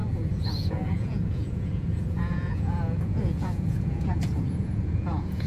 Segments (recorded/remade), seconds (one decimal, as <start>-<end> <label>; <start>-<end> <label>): 0.0-5.5 remade